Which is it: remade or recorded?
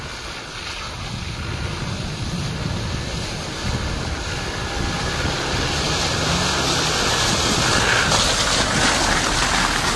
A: recorded